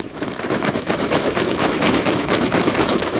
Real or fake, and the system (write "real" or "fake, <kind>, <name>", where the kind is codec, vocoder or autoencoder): fake, autoencoder, DAC-VAE